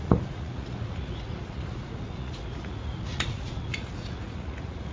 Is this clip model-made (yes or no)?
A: yes